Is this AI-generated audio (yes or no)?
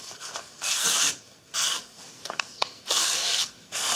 yes